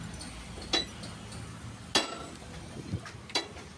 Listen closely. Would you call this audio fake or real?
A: real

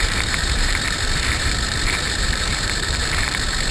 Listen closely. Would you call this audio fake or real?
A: fake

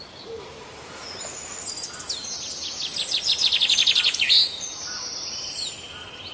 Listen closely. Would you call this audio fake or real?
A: real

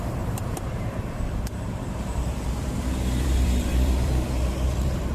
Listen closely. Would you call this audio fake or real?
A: fake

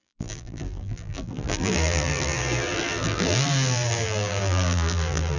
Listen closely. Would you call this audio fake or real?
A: fake